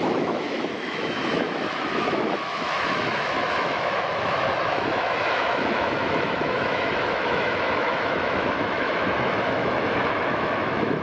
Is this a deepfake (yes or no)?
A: yes